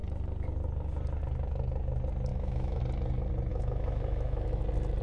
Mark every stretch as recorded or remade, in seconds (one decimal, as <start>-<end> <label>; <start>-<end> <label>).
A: 0.0-2.3 recorded; 2.3-2.8 remade; 2.8-3.5 recorded; 3.5-4.6 remade; 4.6-5.0 recorded